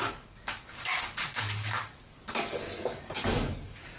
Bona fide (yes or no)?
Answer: no